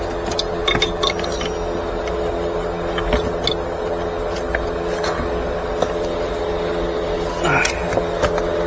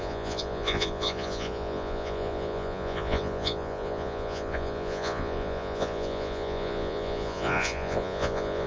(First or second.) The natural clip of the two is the first